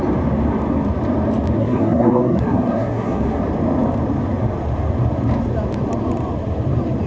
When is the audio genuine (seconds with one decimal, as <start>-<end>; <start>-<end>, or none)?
0.0-1.6; 3.4-7.1